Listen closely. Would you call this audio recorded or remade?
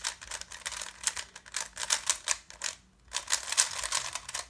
recorded